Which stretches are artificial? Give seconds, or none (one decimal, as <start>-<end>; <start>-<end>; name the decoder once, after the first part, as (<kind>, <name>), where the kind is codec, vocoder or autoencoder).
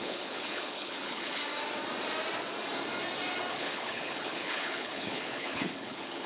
0.0-1.4 (codec, HILCodec); 3.5-6.3